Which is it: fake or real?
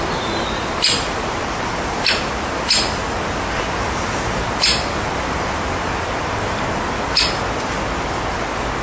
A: real